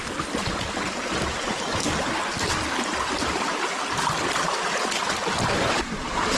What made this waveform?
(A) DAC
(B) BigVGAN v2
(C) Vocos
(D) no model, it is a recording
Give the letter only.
D